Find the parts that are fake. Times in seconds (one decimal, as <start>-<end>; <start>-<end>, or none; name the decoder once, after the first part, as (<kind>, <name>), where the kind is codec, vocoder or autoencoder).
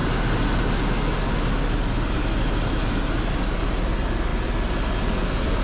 none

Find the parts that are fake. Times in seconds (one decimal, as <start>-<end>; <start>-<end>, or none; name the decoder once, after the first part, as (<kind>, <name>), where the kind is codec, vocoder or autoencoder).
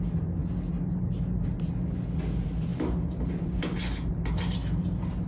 none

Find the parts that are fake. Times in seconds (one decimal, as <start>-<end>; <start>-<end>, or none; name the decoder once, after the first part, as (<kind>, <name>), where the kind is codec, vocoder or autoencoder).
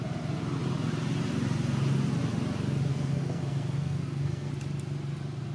2.9-4.5 (codec, SNAC)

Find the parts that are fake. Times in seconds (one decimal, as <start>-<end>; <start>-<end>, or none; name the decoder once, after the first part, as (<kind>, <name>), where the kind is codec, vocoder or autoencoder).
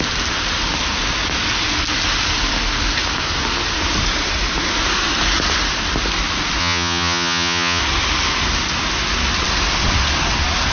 6.6-7.8 (vocoder, HiFi-GAN)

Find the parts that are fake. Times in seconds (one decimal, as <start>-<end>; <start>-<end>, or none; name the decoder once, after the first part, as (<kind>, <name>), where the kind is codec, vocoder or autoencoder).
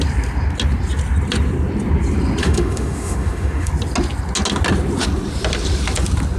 2.4-3.7 (autoencoder, DAC-VAE)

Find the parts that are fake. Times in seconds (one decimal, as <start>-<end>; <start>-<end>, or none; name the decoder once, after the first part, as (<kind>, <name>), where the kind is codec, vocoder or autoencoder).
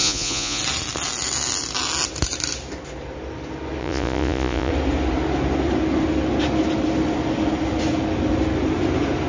0.0-0.6 (vocoder, Vocos); 3.8-4.7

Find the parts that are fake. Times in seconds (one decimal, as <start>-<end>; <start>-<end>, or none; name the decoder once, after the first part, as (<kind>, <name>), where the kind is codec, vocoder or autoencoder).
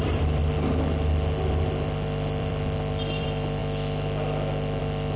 0.0-0.4 (vocoder, BigVGAN v2); 1.5-3.6; 4.8-5.2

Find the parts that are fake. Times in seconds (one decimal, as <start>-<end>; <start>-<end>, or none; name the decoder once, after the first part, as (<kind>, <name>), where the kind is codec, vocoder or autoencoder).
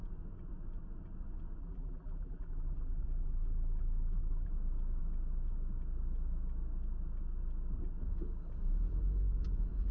1.6-4.5 (vocoder, BigVGAN v2)